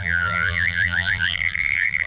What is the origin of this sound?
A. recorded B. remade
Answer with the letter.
B